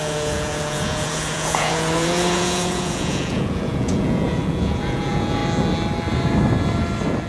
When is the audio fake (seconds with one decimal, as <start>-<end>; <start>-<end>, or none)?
0.0-5.4